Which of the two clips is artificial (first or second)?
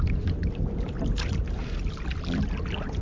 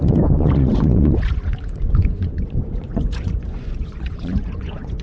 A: second